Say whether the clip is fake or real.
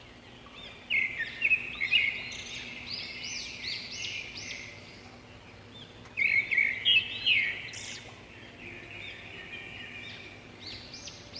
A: real